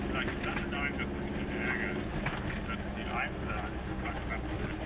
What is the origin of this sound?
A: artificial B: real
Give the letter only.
B